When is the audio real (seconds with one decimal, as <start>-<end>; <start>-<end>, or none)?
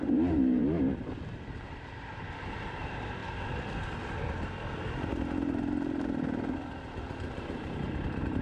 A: 0.6-1.5; 3.2-7.4